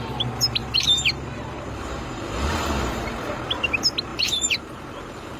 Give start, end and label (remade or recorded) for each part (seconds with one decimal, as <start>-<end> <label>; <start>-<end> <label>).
0.0-0.6 recorded; 0.6-3.0 remade; 3.0-4.1 recorded; 4.1-5.4 remade